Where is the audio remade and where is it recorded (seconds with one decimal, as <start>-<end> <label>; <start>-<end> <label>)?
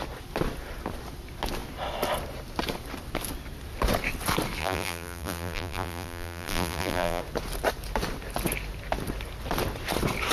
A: 0.0-4.6 recorded; 4.6-7.2 remade; 7.2-10.3 recorded